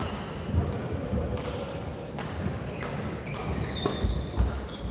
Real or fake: real